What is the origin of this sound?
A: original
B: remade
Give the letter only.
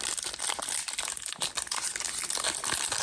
A